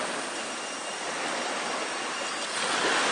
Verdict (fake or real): real